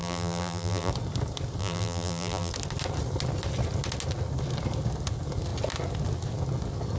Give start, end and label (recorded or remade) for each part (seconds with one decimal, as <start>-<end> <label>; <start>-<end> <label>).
0.0-0.9 remade; 0.9-1.6 recorded; 1.6-2.5 remade; 2.5-7.0 recorded